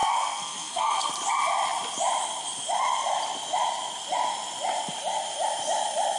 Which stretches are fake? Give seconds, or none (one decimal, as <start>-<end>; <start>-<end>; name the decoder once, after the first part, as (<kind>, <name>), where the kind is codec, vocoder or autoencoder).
0.0-1.1 (codec, SNAC)